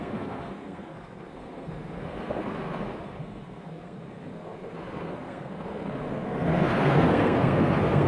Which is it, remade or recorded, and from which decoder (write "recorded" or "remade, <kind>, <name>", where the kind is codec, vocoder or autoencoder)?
remade, codec, SNAC